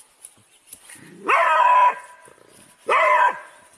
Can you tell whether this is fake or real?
real